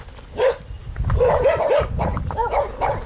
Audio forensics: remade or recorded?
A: recorded